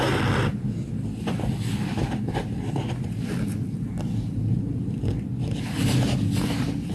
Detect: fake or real real